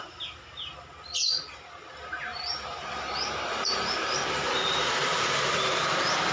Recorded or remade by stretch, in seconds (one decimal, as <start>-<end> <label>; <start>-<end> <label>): 0.0-2.3 recorded; 2.3-6.3 remade